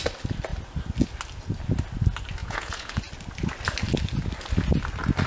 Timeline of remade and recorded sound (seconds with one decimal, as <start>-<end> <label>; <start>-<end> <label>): 0.0-2.4 recorded; 2.4-3.0 remade; 3.0-5.3 recorded